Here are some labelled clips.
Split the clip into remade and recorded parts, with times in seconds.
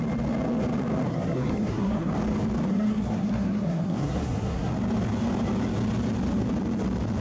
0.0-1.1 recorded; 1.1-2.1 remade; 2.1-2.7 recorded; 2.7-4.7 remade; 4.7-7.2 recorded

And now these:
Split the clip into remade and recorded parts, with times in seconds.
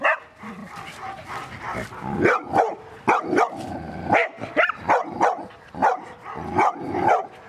0.0-7.5 recorded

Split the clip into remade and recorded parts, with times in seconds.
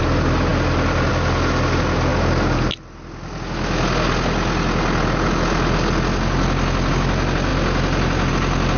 0.0-8.8 recorded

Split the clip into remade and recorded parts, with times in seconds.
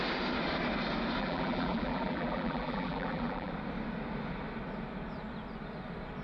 0.0-1.2 recorded; 1.2-3.5 remade; 3.5-6.2 recorded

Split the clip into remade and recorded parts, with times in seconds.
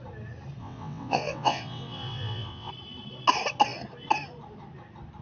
0.0-0.6 recorded; 0.6-2.7 remade; 2.7-5.2 recorded